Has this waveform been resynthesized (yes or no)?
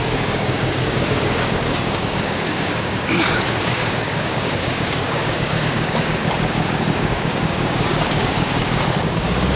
yes